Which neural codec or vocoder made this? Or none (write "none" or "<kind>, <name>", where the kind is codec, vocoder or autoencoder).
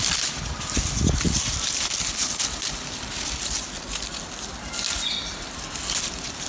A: none